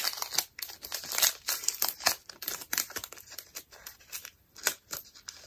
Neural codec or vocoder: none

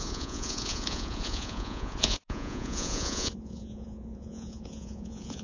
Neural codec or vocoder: vocoder, Vocos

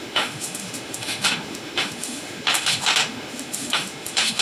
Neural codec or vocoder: autoencoder, DAC-VAE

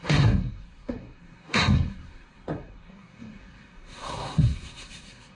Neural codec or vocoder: codec, SNAC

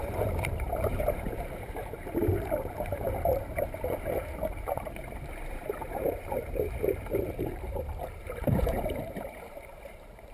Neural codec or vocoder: vocoder, BigVGAN v2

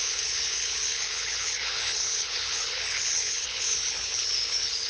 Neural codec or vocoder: codec, HILCodec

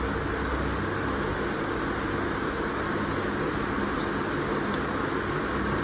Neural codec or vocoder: none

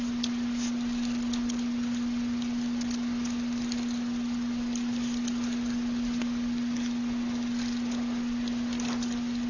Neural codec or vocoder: none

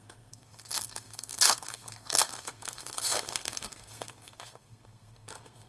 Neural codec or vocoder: codec, SNAC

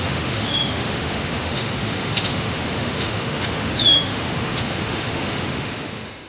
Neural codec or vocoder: autoencoder, DAC-VAE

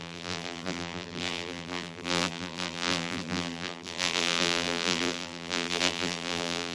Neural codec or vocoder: vocoder, BigVGAN v2